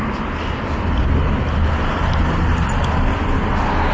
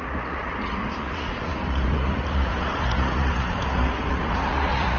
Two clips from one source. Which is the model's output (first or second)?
second